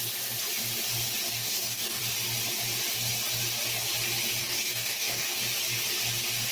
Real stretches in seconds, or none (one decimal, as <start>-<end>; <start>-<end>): 0.0-1.3; 2.0-4.4; 5.4-6.5